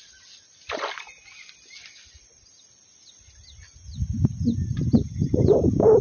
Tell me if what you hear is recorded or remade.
recorded